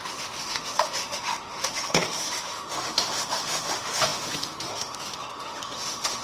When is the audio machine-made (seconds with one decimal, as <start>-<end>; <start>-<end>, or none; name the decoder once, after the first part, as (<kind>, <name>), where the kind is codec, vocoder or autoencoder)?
0.0-6.2 (autoencoder, DAC-VAE)